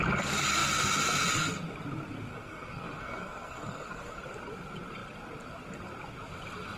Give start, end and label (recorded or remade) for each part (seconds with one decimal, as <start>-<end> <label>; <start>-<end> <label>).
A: 0.0-2.3 recorded; 2.3-4.2 remade; 4.2-6.8 recorded